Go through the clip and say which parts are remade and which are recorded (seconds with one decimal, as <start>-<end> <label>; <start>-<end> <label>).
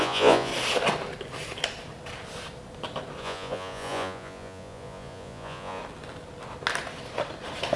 0.0-0.5 remade; 0.5-3.2 recorded; 3.2-5.8 remade; 5.8-7.8 recorded